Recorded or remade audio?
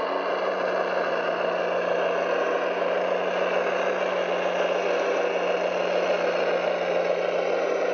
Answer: recorded